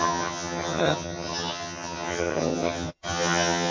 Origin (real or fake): fake